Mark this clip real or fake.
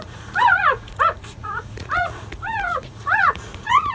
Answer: fake